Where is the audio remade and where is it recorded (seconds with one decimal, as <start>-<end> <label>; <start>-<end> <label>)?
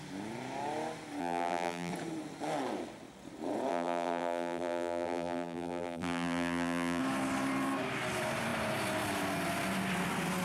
0.0-1.2 recorded; 1.2-1.9 remade; 1.9-3.7 recorded; 3.7-7.0 remade; 7.0-10.4 recorded